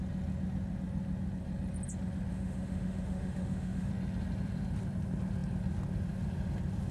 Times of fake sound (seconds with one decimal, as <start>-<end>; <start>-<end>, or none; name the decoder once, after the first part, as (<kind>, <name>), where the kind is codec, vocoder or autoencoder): 2.3-3.9 (autoencoder, DAC-VAE)

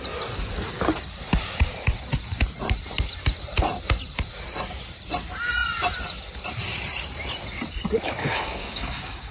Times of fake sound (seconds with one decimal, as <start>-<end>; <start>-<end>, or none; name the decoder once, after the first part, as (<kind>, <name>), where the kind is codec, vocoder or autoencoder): 8.2-9.3 (codec, DAC)

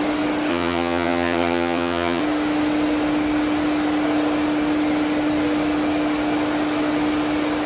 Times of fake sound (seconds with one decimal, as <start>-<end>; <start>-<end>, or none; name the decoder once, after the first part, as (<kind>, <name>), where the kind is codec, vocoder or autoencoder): 0.5-2.2 (vocoder, HiFi-GAN)

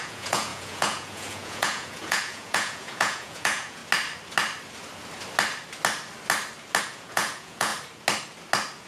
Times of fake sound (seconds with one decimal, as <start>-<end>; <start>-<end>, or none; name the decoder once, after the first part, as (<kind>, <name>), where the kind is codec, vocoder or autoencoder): 0.0-3.8 (vocoder, Vocos); 6.8-7.7

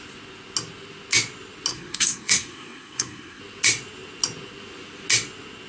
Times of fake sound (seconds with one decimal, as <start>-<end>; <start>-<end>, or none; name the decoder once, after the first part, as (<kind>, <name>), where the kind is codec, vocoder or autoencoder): 1.7-3.4 (codec, SNAC)

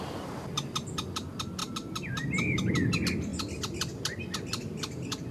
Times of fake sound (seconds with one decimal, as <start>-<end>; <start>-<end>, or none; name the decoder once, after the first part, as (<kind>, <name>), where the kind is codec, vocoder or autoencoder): none

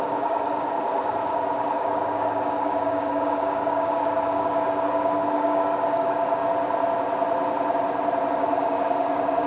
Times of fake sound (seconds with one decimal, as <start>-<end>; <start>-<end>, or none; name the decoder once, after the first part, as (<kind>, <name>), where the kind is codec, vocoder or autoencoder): 0.0-6.4 (codec, DAC); 8.3-9.5